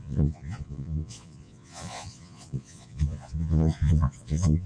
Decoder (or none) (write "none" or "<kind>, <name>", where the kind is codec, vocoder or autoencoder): vocoder, Vocos